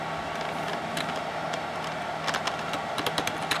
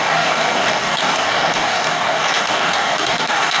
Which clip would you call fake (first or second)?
second